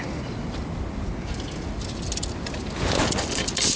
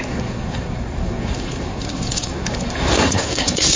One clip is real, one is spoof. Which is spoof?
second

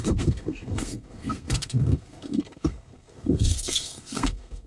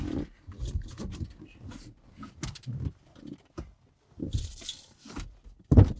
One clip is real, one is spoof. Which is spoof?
first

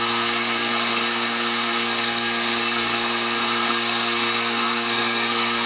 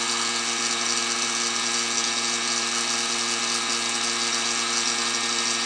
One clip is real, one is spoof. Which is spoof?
first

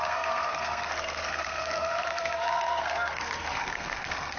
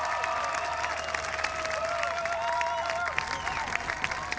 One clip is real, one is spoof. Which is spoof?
first